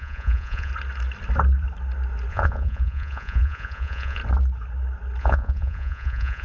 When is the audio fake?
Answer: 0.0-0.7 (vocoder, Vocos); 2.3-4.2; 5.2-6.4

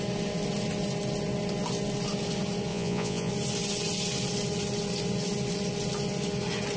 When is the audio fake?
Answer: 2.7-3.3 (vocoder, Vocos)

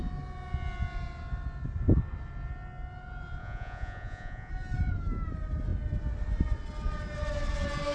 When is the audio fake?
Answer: 3.4-4.5 (vocoder, Vocos)

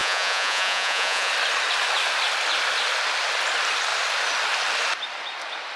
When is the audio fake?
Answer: 0.0-1.3 (vocoder, Vocos)

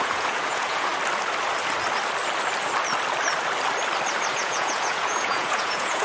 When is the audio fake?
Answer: 0.0-0.9 (vocoder, Vocos); 4.3-6.0

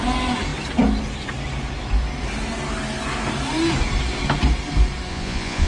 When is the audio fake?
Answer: 5.1-5.7 (vocoder, Vocos)

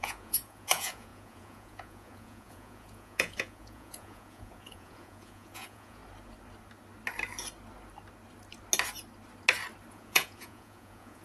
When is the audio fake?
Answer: 0.0-6.0 (vocoder, Vocos); 9.9-11.2